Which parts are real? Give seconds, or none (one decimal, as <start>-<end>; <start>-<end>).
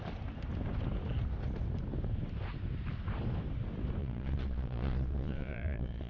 0.0-4.0